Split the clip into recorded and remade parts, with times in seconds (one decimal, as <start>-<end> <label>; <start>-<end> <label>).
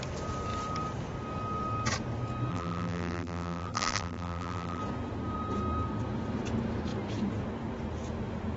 0.0-2.5 recorded; 2.5-4.8 remade; 4.8-8.6 recorded